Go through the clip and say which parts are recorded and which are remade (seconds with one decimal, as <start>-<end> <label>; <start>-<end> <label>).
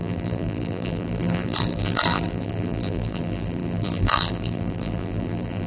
0.0-5.7 remade